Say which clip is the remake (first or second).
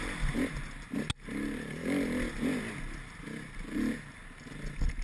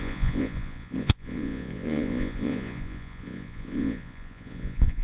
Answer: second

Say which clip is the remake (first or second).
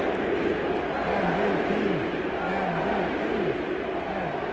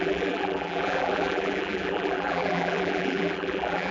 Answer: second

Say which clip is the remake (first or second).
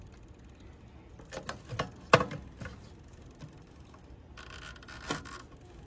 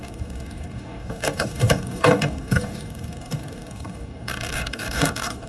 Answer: second